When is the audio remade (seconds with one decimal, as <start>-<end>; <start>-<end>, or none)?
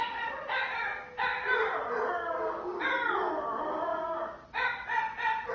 none